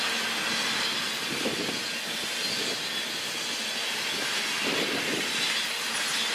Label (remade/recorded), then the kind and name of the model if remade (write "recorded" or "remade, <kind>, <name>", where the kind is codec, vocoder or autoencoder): recorded